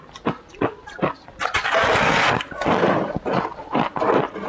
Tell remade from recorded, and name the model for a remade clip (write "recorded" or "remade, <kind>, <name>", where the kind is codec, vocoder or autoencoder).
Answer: recorded